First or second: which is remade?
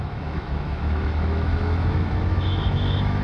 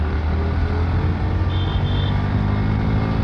first